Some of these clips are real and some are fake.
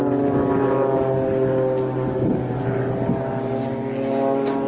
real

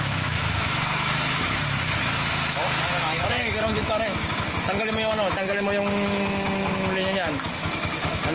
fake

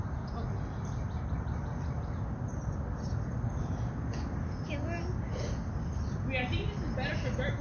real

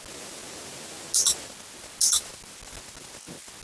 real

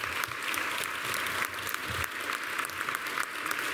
real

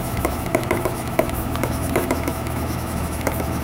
fake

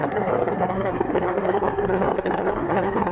fake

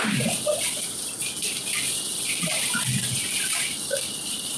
real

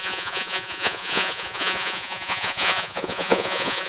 fake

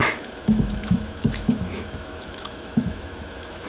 fake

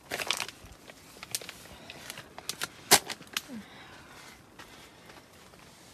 real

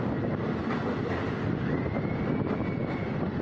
real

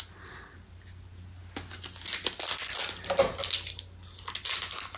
real